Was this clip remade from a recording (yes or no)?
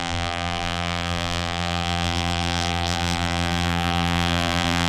yes